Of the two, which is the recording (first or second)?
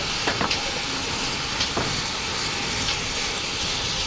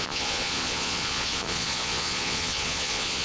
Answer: first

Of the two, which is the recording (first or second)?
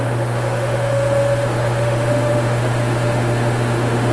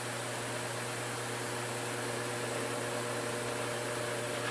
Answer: second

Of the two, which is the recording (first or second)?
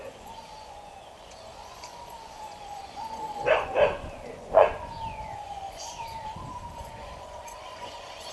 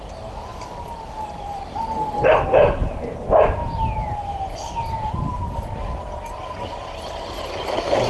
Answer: second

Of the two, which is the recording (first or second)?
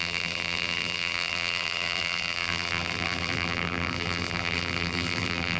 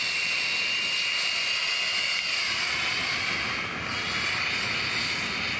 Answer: second